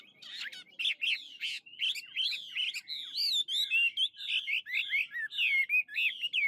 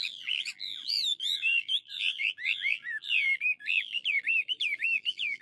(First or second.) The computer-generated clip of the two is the second